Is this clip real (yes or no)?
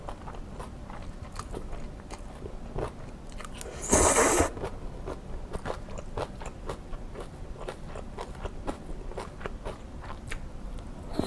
yes